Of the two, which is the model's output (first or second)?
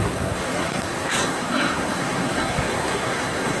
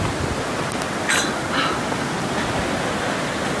first